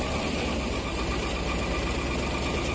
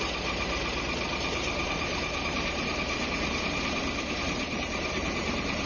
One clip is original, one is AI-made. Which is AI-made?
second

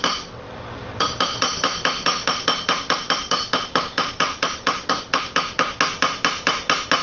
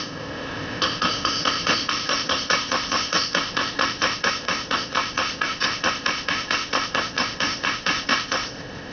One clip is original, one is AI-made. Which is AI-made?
second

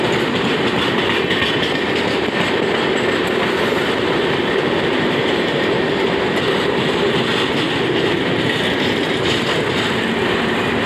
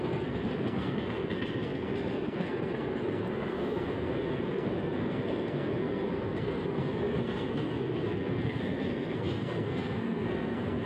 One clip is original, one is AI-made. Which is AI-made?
second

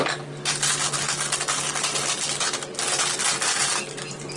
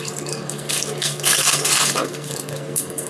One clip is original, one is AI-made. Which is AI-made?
second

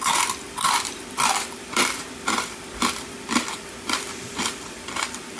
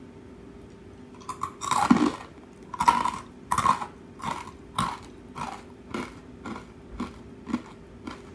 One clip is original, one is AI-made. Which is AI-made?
first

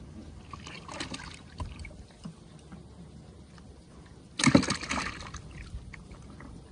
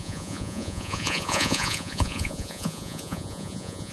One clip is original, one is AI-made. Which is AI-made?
second